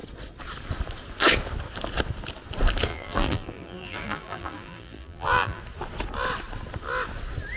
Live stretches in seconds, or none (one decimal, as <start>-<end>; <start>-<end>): 0.0-2.9; 5.6-7.6